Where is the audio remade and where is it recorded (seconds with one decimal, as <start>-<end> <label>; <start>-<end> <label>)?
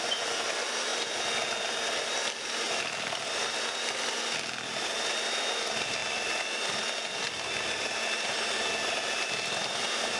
0.0-6.0 recorded; 6.0-8.0 remade; 8.0-10.2 recorded